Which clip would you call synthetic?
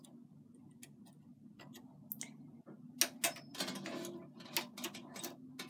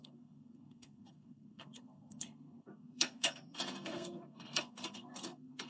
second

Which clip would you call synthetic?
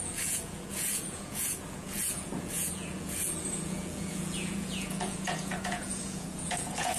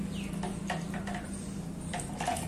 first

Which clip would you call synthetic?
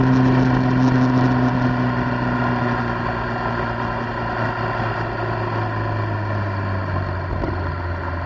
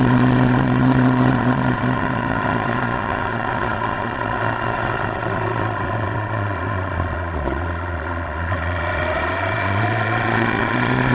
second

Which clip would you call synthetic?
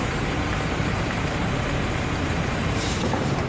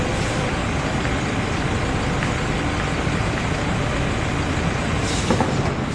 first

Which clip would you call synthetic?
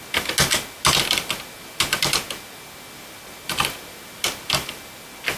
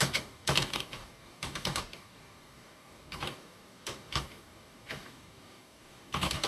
second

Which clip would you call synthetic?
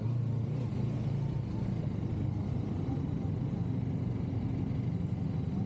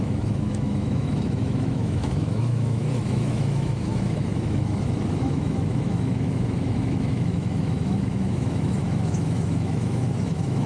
second